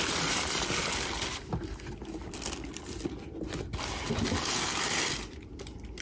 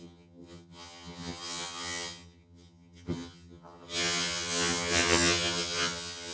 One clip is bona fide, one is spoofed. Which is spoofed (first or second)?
second